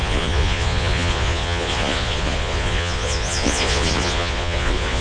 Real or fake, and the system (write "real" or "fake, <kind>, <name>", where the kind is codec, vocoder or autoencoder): fake, vocoder, Vocos